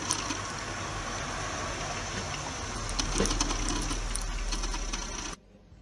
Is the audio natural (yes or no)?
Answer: yes